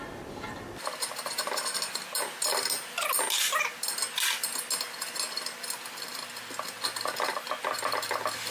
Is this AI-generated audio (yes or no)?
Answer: no